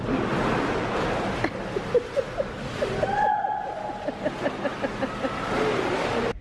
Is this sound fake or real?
real